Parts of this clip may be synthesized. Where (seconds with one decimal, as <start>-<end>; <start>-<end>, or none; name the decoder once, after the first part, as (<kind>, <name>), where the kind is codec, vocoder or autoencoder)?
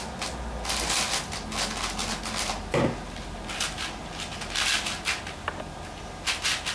none